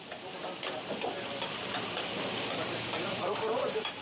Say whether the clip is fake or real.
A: fake